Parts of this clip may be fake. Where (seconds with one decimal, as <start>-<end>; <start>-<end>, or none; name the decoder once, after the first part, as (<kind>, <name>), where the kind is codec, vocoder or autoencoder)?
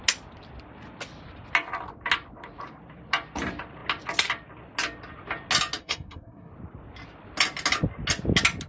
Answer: 5.8-6.5 (codec, SNAC)